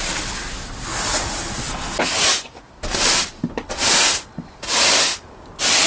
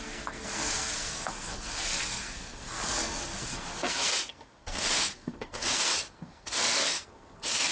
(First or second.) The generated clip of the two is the second